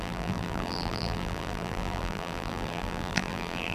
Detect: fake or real fake